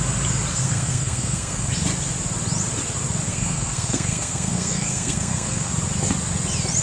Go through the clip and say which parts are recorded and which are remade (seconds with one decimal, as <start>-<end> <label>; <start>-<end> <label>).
0.0-0.5 recorded; 0.5-1.7 remade; 1.7-3.3 recorded; 3.3-5.7 remade; 5.7-6.8 recorded